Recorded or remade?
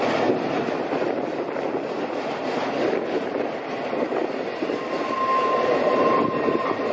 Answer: recorded